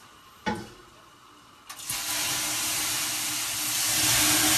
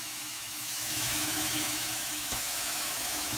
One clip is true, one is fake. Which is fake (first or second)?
second